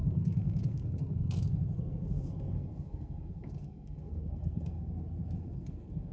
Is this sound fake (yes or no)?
yes